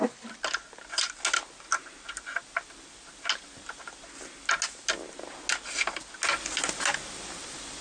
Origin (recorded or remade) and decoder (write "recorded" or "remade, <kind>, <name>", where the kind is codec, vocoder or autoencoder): recorded